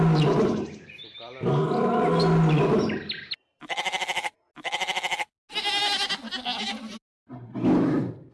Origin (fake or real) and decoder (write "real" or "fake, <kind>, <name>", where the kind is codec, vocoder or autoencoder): real